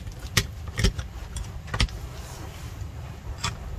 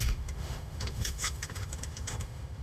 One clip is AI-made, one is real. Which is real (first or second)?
first